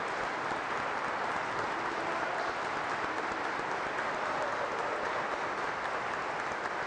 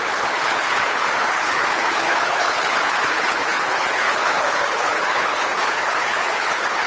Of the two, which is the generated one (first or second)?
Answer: second